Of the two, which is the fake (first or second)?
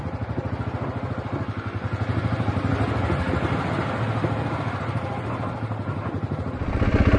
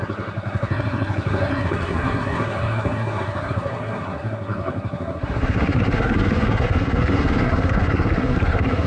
second